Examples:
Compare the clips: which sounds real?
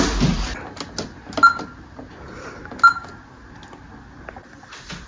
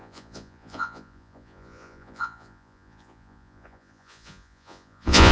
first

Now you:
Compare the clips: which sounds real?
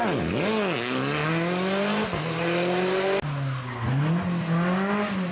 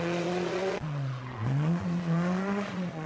first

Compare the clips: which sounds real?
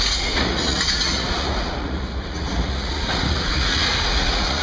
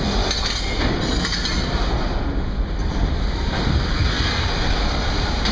second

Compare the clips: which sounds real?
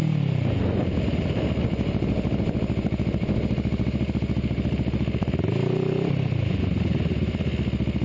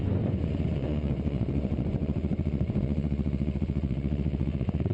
first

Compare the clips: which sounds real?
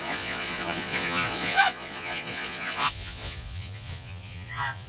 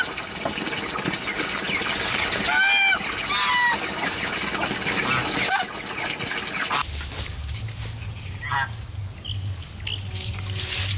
second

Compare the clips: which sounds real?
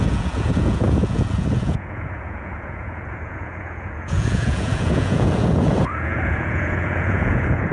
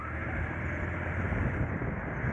second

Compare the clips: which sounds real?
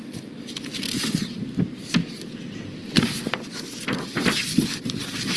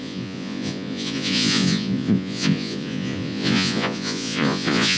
first